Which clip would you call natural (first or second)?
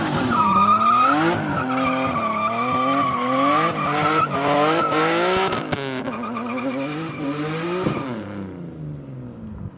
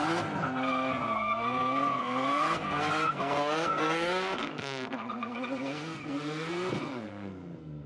first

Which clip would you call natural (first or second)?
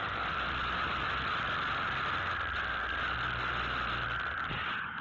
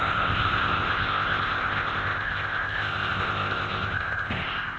first